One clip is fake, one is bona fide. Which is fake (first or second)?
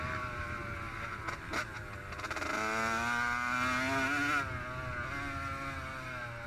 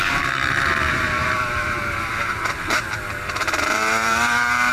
second